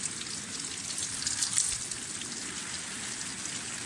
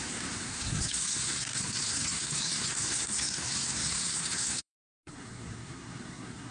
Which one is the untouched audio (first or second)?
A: first